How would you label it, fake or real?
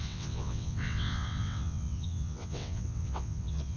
fake